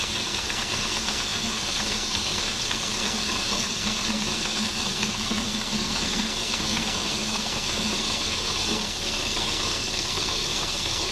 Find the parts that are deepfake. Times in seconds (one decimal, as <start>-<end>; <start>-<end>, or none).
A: 0.0-11.1